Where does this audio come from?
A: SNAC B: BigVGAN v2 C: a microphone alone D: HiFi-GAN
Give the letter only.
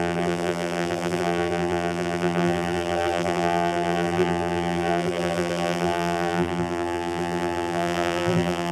B